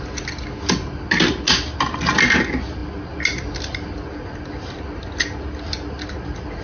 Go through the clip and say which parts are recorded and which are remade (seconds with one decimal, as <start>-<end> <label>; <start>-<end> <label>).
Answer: 0.0-6.6 recorded